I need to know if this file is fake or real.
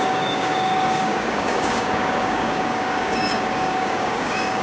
fake